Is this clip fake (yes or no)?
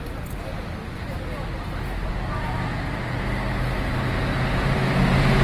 no